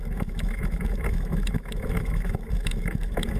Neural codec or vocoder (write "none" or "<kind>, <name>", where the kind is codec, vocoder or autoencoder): autoencoder, DAC-VAE